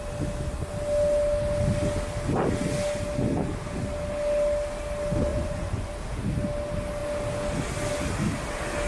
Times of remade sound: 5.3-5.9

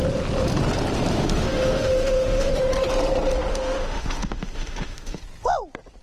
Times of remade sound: 1.1-2.5; 3.5-5.2